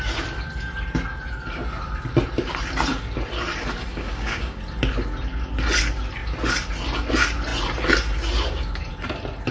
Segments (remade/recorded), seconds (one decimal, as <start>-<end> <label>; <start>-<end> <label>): 0.0-3.9 recorded; 3.9-4.6 remade; 4.6-9.5 recorded